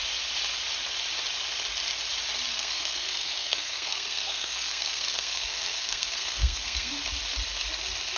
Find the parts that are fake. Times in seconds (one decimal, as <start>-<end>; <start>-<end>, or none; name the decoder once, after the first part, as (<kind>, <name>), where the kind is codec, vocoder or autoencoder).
2.5-6.9 (codec, SNAC)